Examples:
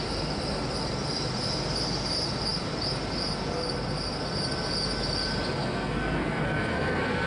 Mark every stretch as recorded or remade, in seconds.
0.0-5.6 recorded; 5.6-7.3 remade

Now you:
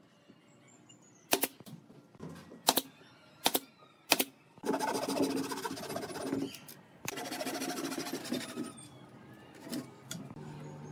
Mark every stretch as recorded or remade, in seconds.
0.0-10.9 recorded

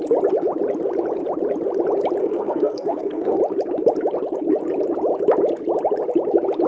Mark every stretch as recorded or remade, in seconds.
0.0-2.2 recorded; 2.2-3.4 remade; 3.4-6.7 recorded

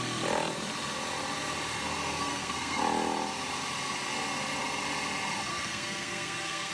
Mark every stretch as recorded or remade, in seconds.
0.0-2.1 recorded; 2.1-2.8 remade; 2.8-5.5 recorded; 5.5-6.7 remade

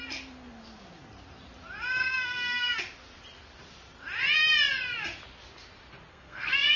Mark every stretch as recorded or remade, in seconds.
0.0-2.0 recorded; 2.0-2.8 remade; 2.8-6.1 recorded; 6.1-6.8 remade

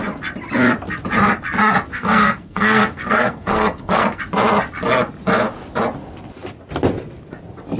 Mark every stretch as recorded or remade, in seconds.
0.0-1.9 recorded; 1.9-4.2 remade; 4.2-7.8 recorded